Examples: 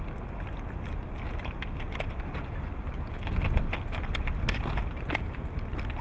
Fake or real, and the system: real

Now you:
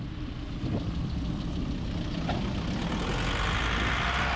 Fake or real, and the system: real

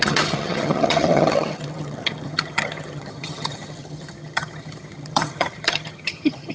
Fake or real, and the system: fake, vocoder, HiFi-GAN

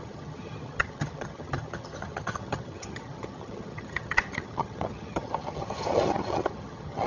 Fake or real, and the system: fake, vocoder, HiFi-GAN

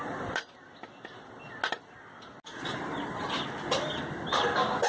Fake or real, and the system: real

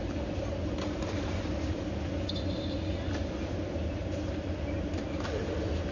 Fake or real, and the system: real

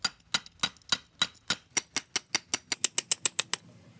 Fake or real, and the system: real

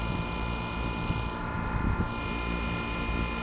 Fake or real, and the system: real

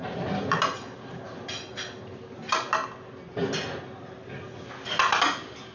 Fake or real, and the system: real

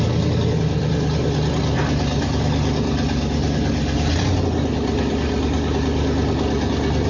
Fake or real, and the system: real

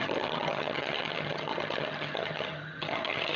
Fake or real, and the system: fake, vocoder, HiFi-GAN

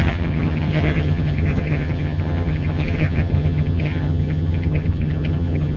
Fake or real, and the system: fake, vocoder, HiFi-GAN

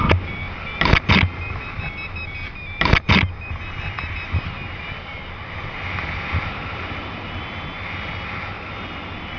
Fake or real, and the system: real